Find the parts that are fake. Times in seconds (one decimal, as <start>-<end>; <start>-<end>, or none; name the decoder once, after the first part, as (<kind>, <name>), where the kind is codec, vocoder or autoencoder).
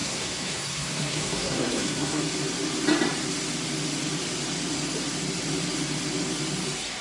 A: 0.0-2.2 (codec, SNAC)